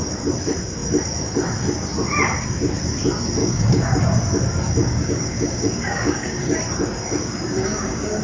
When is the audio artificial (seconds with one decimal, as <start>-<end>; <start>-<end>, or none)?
3.4-4.0; 4.8-6.6; 7.2-8.2